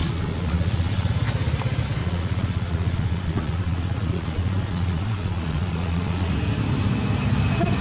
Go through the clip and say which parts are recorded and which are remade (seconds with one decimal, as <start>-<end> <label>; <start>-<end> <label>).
0.0-1.1 remade; 1.1-2.0 recorded; 2.0-6.3 remade; 6.3-7.8 recorded